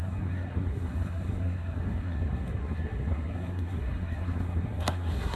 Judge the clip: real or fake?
fake